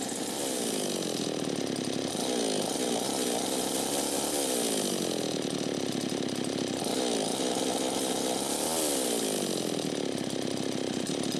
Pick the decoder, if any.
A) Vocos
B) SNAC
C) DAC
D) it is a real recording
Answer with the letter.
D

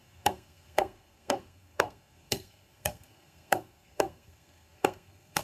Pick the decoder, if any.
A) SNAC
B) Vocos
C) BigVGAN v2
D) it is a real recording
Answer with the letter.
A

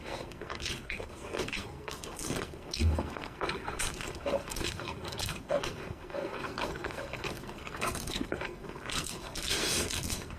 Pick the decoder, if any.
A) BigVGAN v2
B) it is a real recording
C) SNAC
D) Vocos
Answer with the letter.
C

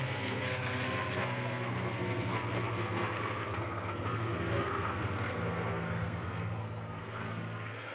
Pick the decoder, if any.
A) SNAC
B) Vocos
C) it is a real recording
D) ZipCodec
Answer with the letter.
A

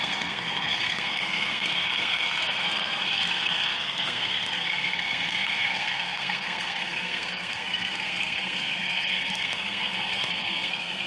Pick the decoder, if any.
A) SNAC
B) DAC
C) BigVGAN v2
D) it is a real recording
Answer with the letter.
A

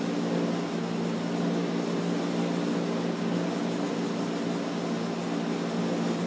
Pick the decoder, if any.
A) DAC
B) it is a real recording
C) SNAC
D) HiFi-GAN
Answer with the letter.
B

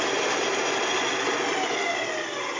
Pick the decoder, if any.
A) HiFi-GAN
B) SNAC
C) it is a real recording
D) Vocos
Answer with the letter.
C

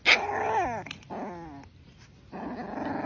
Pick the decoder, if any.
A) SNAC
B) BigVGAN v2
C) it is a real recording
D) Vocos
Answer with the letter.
C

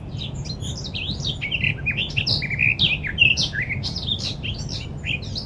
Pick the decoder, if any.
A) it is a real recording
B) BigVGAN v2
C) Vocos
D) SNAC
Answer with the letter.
A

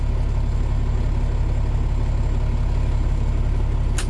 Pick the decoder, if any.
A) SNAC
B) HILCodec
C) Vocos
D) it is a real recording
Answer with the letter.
D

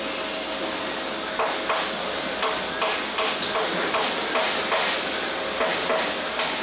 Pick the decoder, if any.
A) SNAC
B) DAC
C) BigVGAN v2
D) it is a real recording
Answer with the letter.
D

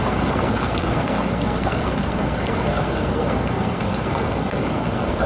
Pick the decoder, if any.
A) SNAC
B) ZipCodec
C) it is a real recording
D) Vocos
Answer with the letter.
A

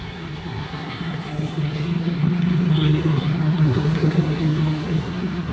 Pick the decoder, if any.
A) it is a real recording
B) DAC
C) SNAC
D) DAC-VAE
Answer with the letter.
C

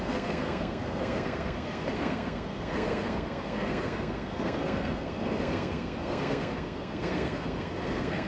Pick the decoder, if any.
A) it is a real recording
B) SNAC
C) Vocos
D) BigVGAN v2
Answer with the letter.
B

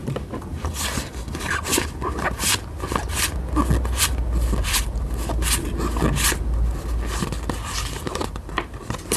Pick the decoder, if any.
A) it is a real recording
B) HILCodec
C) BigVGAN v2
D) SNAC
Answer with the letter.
A